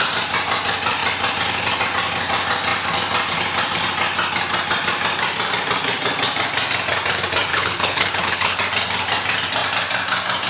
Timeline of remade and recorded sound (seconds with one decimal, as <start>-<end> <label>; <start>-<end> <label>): 0.0-7.5 recorded; 7.5-8.6 remade; 8.6-10.5 recorded